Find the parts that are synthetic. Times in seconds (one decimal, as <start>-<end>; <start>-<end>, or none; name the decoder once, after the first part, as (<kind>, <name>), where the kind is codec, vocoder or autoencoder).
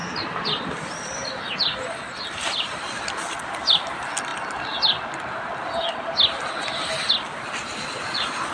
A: 0.0-3.9 (vocoder, BigVGAN v2)